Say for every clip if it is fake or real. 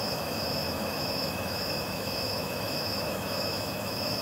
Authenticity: fake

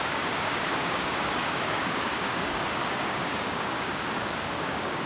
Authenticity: fake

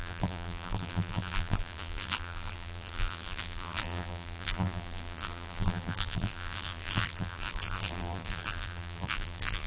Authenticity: fake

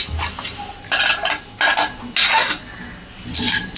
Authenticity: real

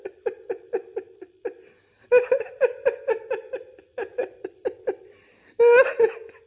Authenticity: real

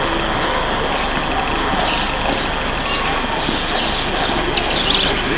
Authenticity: real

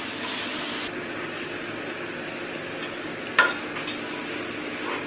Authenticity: real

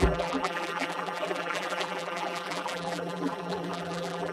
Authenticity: fake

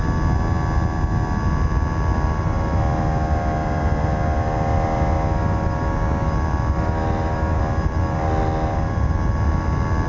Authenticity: real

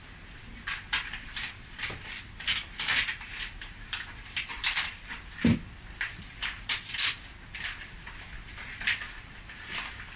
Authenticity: fake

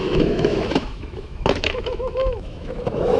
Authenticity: fake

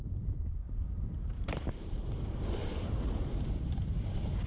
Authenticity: fake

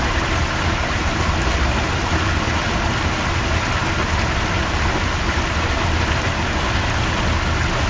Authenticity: real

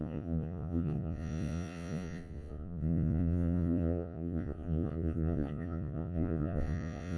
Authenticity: fake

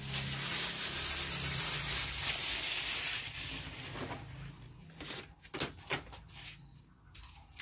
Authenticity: real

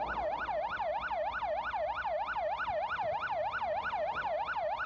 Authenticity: real